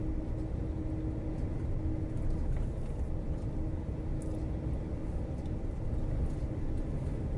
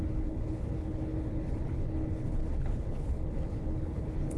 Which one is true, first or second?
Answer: first